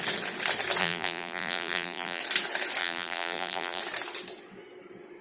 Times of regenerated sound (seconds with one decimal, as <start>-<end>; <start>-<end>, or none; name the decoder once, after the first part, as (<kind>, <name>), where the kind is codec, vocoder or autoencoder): 0.8-2.2 (vocoder, BigVGAN v2); 2.8-3.8